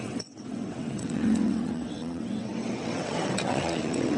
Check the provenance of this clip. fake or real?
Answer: fake